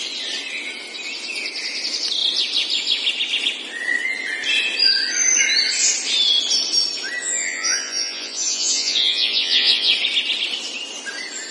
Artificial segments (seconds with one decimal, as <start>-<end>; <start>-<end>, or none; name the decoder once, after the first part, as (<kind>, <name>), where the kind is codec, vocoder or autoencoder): 7.2-9.9 (vocoder, Vocos)